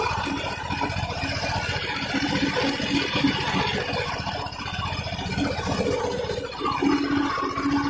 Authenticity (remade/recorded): recorded